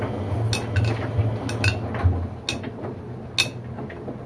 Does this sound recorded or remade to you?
recorded